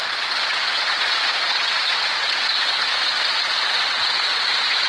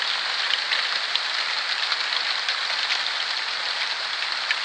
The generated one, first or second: first